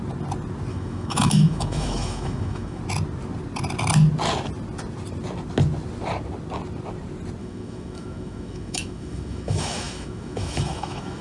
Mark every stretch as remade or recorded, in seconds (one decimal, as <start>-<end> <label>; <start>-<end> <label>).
0.0-0.7 recorded; 0.7-2.8 remade; 2.8-7.4 recorded; 7.4-11.2 remade

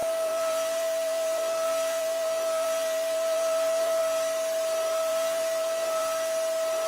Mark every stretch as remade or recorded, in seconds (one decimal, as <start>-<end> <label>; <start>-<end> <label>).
0.0-4.0 remade; 4.0-5.1 recorded; 5.1-6.0 remade; 6.0-6.9 recorded

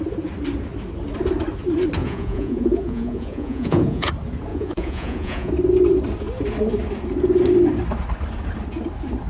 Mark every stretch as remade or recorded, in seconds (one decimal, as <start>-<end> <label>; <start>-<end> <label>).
0.0-2.0 recorded; 2.0-4.1 remade; 4.1-4.5 recorded; 4.5-5.5 remade; 5.5-9.3 recorded

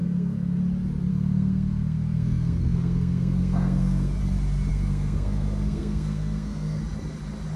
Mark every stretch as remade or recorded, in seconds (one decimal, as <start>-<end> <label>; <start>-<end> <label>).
0.0-0.6 remade; 0.6-1.1 recorded; 1.1-4.2 remade; 4.2-4.7 recorded; 4.7-6.8 remade; 6.8-7.6 recorded

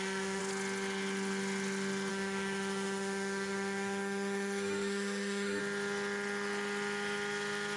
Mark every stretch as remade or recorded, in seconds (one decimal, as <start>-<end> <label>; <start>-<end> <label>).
0.0-0.4 remade; 0.4-2.1 recorded; 2.1-5.6 remade; 5.6-7.8 recorded

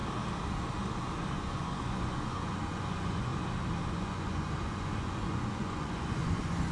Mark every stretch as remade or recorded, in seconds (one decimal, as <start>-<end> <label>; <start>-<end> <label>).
0.0-1.3 recorded; 1.3-3.3 remade; 3.3-3.9 recorded; 3.9-6.7 remade